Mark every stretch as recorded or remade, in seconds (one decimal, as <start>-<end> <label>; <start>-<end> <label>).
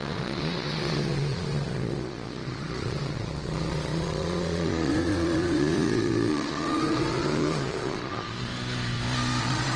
0.0-8.5 remade; 8.5-9.4 recorded; 9.4-9.8 remade